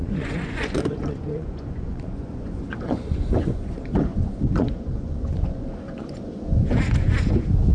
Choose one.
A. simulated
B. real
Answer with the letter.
A